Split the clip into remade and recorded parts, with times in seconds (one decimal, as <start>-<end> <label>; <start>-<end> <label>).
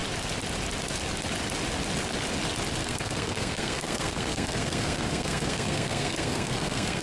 0.0-2.8 recorded; 2.8-7.0 remade